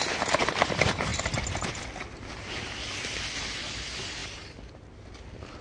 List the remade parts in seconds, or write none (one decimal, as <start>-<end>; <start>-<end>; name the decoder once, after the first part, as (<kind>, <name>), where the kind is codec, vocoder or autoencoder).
none